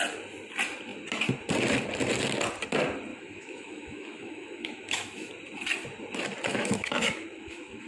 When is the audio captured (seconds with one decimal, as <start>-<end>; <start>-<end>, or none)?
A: 0.0-3.1; 5.3-6.5

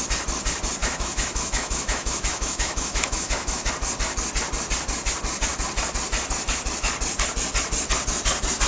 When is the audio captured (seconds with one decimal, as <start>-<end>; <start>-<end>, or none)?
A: 0.0-0.8; 3.7-8.7

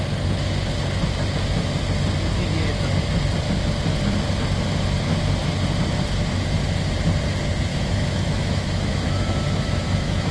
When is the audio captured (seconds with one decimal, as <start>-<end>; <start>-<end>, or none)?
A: 0.0-7.7